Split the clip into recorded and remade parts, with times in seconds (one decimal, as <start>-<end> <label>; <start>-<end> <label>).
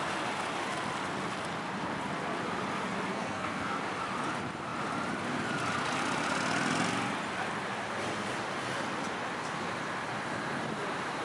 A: 0.0-3.1 recorded; 3.1-3.8 remade; 3.8-11.2 recorded